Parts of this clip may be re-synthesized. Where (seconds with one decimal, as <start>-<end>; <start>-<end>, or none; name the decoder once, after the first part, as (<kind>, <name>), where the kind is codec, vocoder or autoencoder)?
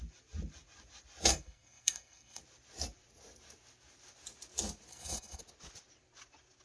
1.3-2.4 (codec, SNAC); 4.9-5.4